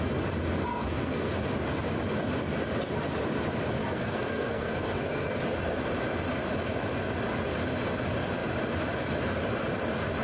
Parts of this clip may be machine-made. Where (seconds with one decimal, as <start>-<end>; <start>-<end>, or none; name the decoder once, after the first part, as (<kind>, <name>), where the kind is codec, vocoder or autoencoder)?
0.6-1.3 (codec, SNAC); 3.8-5.4